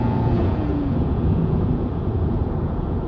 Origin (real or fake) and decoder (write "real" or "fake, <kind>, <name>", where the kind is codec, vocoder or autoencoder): fake, vocoder, Vocos